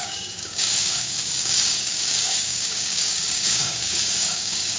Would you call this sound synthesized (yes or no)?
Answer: yes